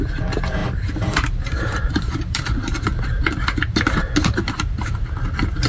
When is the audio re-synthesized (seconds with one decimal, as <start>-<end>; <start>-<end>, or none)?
0.6-3.0; 4.2-4.9